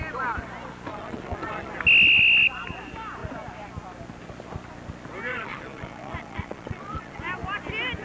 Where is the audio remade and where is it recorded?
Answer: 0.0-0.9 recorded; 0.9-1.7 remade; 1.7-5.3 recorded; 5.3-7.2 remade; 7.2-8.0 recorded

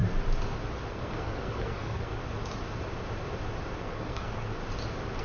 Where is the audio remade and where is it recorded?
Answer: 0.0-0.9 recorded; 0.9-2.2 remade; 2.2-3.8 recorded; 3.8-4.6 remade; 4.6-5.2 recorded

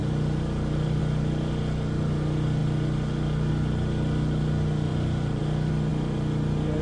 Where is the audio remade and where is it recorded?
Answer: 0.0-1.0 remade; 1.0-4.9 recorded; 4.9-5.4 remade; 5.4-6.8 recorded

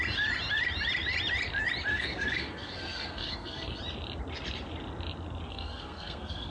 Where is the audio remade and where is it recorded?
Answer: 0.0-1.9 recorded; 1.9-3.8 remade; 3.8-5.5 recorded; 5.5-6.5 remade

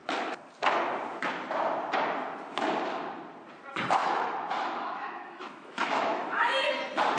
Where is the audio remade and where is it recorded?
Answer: 0.0-4.0 recorded; 4.0-6.7 remade; 6.7-7.2 recorded